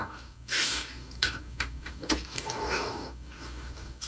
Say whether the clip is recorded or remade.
remade